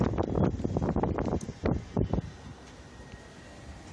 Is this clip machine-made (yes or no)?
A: no